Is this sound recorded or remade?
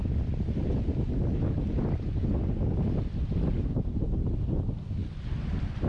recorded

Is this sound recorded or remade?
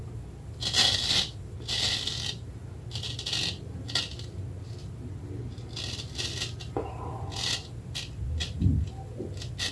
recorded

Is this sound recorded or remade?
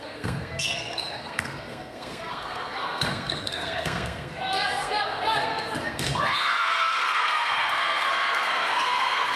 remade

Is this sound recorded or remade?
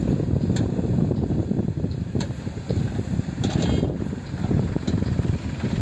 remade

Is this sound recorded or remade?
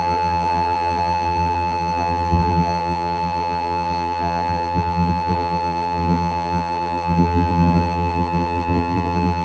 remade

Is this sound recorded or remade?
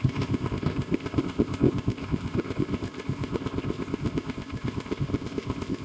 remade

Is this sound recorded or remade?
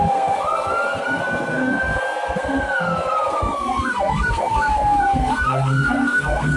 remade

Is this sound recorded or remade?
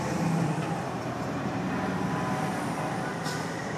remade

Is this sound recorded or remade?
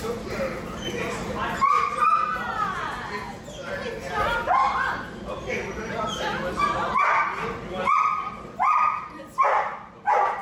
recorded